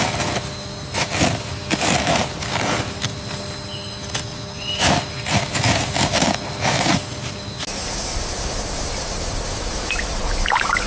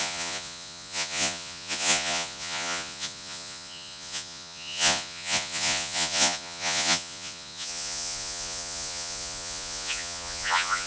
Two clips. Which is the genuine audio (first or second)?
first